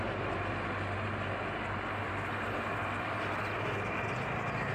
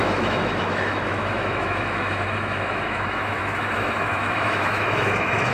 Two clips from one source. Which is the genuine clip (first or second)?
first